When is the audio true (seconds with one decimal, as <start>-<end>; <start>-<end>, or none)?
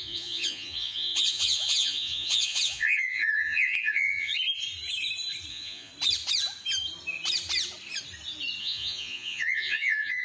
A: 4.3-5.5; 5.9-8.6